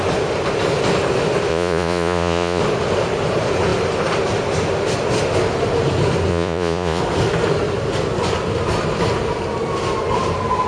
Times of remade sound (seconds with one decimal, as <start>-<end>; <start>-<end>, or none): 1.5-2.6; 6.3-7.0